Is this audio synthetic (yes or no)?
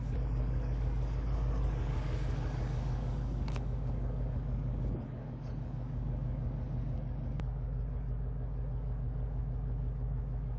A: yes